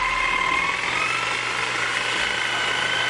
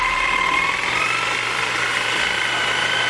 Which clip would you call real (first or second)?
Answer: first